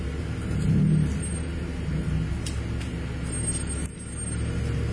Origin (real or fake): real